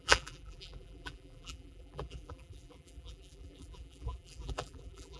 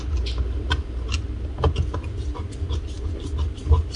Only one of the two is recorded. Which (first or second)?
second